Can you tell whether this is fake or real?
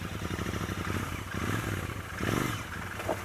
real